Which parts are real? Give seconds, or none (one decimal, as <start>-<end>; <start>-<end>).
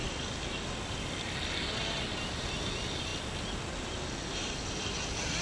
0.0-5.4